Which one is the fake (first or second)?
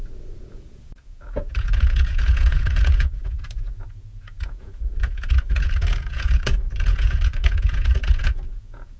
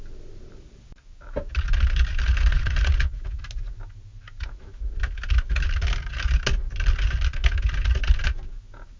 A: first